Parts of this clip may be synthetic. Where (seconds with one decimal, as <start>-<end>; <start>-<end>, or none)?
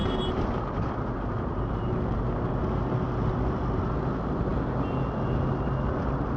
0.0-2.2